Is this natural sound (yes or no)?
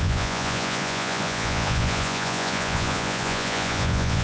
no